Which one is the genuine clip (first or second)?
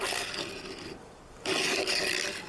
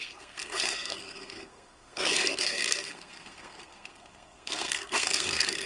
first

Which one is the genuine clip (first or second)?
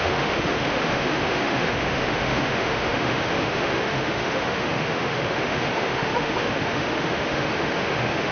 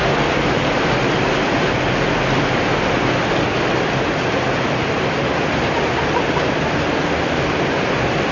second